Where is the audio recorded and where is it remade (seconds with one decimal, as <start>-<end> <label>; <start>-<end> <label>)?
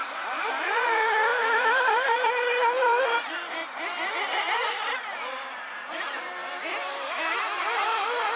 0.0-6.4 remade; 6.4-7.3 recorded; 7.3-8.4 remade